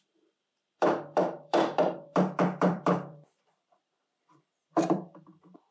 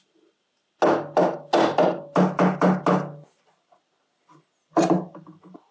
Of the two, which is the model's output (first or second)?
first